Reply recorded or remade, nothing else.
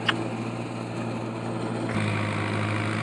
recorded